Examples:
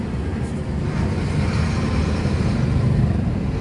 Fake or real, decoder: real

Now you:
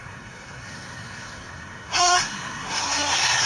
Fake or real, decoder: fake, codec, SNAC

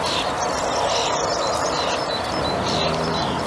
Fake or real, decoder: real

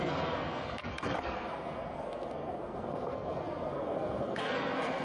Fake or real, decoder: fake, codec, SNAC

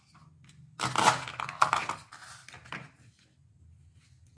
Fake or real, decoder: real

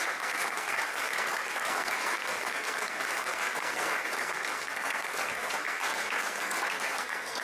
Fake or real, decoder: fake, codec, SNAC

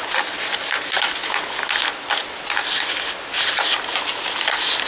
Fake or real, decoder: real